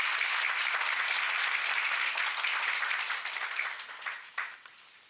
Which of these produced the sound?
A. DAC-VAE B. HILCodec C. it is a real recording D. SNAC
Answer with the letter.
C